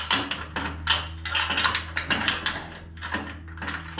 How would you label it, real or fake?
real